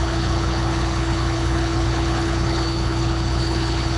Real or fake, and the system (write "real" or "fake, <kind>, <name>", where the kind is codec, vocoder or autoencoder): fake, codec, HILCodec